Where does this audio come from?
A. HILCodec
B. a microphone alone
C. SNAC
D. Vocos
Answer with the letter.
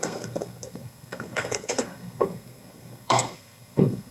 C